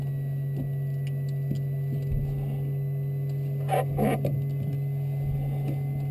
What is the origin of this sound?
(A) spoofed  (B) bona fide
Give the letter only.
B